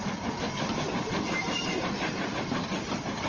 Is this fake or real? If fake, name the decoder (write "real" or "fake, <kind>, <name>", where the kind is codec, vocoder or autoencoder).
real